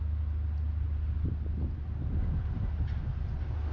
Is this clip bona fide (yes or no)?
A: yes